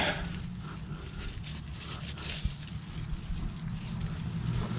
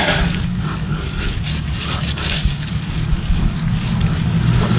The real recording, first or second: first